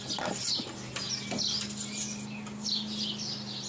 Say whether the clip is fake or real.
real